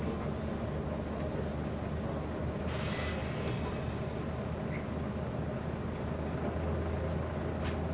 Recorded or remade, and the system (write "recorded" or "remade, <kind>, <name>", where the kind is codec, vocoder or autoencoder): recorded